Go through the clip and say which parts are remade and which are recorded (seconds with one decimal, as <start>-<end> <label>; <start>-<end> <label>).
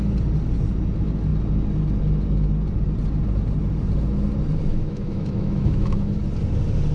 0.0-4.7 recorded; 4.7-6.2 remade; 6.2-6.9 recorded